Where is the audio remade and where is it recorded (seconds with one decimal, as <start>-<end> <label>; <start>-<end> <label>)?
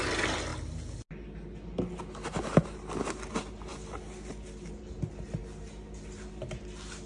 0.0-7.1 recorded